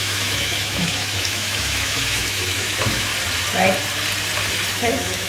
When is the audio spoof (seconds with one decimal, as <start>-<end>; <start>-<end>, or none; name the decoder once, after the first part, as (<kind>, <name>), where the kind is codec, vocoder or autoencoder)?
0.0-3.1 (autoencoder, DAC-VAE); 4.7-5.3